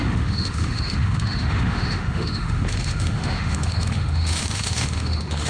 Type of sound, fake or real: fake